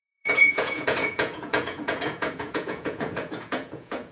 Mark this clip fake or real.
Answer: fake